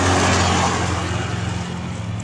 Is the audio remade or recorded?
recorded